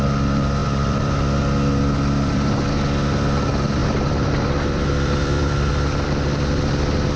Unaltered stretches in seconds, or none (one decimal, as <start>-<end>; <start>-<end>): 0.0-0.6; 2.7-3.8; 5.7-7.2